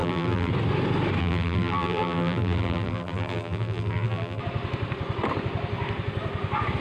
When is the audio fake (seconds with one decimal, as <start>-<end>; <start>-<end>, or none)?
0.0-0.5; 1.2-4.4